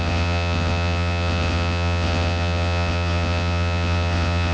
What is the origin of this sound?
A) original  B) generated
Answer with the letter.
B